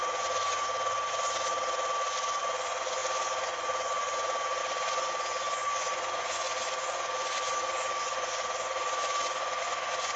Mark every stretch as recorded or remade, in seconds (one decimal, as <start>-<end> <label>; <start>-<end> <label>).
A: 0.0-0.6 remade; 0.6-2.4 recorded; 2.4-10.2 remade